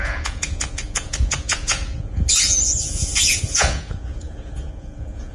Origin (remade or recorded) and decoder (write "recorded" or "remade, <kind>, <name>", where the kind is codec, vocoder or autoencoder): remade, vocoder, Vocos